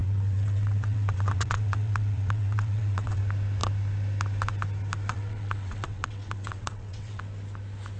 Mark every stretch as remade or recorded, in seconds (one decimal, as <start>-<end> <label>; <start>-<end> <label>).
0.0-3.2 remade; 3.2-5.1 recorded; 5.1-7.2 remade; 7.2-8.0 recorded